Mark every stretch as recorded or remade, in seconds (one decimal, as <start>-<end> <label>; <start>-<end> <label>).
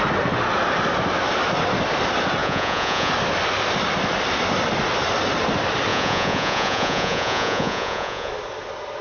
0.0-2.4 recorded; 2.4-3.1 remade; 3.1-5.9 recorded; 5.9-8.3 remade; 8.3-9.0 recorded